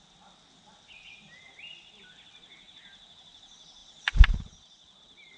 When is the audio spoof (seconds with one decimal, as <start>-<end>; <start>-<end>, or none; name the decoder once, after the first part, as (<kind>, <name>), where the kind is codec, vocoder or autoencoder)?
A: 3.8-5.0 (vocoder, BigVGAN v2)